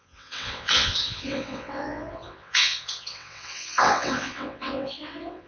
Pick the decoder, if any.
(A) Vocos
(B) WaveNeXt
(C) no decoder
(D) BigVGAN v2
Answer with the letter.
B